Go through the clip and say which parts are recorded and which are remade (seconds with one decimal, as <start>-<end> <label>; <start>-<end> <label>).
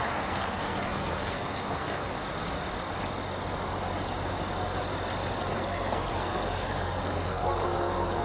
0.0-2.2 remade; 2.2-5.5 recorded; 5.5-8.2 remade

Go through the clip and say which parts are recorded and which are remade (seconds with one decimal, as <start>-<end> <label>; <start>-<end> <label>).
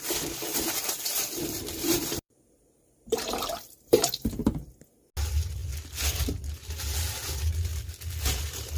0.0-0.5 recorded; 0.5-4.6 remade; 4.6-8.8 recorded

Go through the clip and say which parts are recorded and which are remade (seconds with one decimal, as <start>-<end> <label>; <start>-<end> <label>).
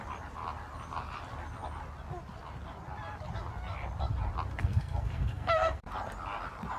0.0-4.6 recorded; 4.6-5.8 remade; 5.8-6.8 recorded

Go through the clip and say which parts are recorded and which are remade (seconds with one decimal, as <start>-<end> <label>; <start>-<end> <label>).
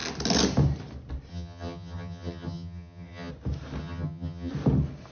0.0-1.3 recorded; 1.3-3.3 remade; 3.3-3.8 recorded; 3.8-4.5 remade; 4.5-5.1 recorded